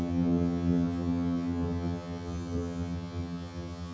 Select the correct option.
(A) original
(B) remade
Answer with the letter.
B